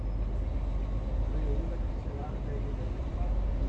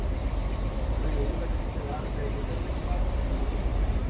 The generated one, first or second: second